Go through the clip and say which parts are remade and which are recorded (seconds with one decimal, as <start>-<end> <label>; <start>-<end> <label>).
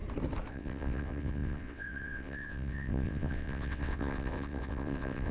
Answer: 0.0-0.5 recorded; 0.5-5.3 remade